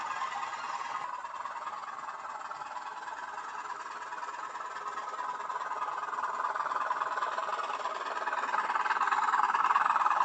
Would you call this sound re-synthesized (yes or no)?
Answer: no